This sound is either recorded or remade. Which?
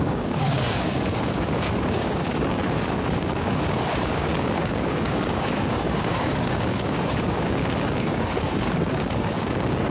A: remade